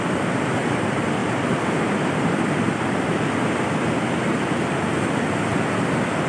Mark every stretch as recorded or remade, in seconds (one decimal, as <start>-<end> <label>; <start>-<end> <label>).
0.0-6.3 recorded